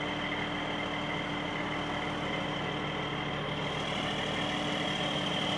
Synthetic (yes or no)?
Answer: no